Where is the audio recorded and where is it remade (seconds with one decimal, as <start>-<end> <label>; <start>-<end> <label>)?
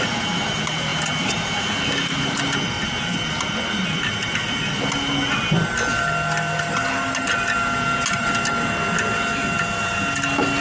0.0-10.6 recorded